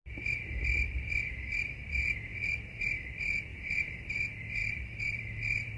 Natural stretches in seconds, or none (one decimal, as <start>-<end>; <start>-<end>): 0.0-3.5; 4.1-4.6